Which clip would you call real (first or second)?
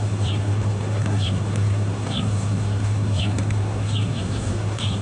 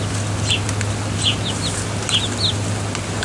second